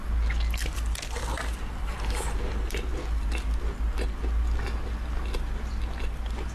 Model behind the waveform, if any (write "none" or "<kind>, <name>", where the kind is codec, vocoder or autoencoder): none